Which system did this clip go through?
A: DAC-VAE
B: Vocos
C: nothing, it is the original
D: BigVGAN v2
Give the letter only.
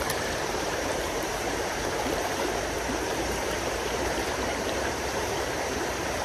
D